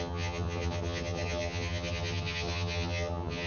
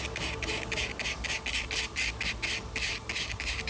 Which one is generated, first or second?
first